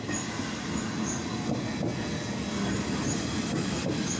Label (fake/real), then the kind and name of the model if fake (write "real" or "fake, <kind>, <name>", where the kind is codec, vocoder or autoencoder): real